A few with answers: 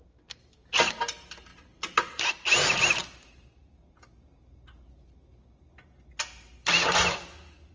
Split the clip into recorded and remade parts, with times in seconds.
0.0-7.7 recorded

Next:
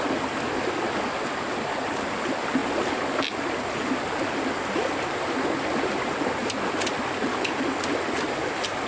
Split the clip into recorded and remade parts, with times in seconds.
0.0-8.9 recorded

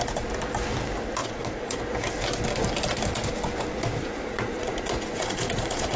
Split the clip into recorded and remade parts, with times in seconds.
0.0-1.2 recorded; 1.2-1.8 remade; 1.8-4.0 recorded; 4.0-6.0 remade

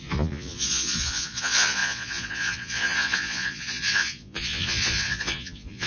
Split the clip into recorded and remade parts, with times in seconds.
0.0-5.9 remade